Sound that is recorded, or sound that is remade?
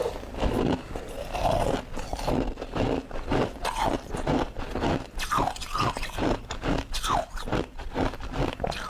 recorded